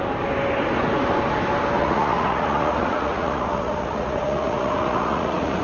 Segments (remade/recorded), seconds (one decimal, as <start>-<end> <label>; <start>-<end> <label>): 0.0-1.8 recorded; 1.8-5.6 remade